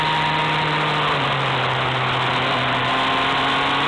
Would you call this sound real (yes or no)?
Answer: yes